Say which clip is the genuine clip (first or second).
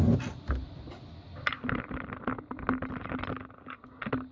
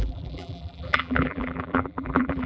first